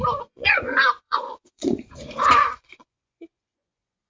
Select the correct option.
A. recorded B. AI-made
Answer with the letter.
B